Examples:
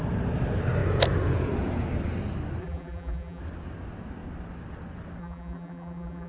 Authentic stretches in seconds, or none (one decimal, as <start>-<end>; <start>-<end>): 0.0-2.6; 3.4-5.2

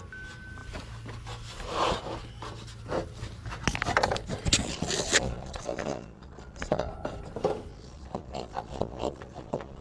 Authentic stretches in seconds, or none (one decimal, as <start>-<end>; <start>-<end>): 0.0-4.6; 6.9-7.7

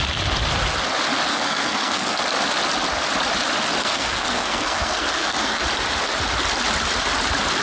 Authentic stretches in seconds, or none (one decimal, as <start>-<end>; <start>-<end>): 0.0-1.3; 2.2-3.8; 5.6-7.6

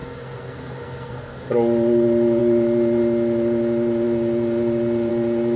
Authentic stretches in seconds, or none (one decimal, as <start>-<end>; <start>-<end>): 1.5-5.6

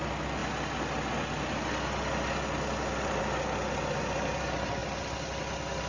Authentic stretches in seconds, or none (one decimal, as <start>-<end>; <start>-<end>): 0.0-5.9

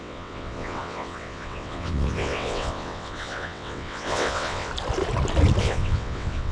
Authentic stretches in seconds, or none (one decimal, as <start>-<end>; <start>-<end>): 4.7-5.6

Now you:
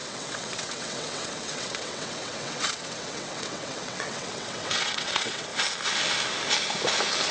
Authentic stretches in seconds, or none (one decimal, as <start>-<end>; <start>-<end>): 5.5-7.3

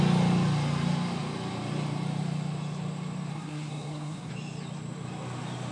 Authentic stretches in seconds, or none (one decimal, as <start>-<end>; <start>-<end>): 0.0-3.3; 4.3-5.7